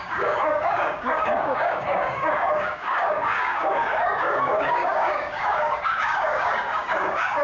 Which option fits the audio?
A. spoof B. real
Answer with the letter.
A